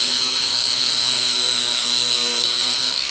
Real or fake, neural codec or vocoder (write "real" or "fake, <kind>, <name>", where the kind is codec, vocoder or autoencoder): fake, codec, SNAC